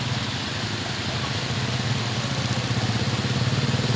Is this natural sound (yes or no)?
yes